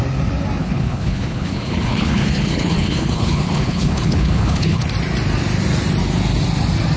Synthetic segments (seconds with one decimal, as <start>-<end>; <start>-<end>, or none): 0.6-4.8